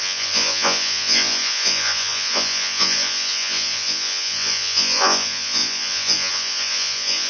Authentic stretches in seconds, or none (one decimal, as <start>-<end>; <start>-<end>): none